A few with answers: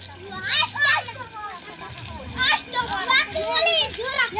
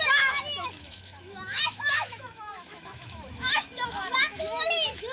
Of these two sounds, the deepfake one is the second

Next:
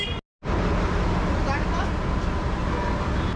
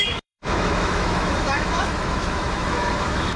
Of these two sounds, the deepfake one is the second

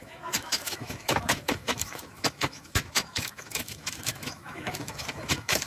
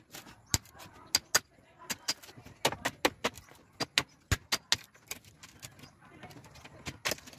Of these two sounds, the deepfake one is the first